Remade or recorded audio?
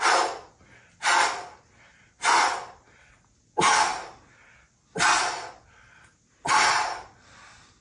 recorded